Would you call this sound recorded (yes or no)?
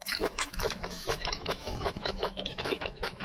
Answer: no